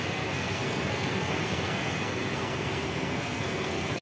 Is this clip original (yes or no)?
no